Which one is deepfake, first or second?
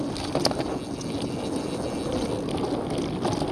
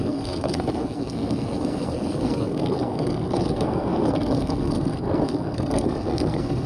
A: second